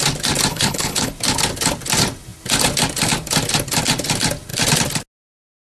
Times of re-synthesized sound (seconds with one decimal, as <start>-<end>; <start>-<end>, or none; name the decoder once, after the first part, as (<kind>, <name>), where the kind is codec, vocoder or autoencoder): 0.5-1.1 (codec, HILCodec)